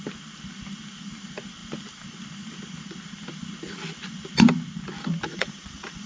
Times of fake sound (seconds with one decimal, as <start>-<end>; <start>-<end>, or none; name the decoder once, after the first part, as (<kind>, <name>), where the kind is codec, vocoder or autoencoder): 5.3-6.1 (vocoder, Vocos)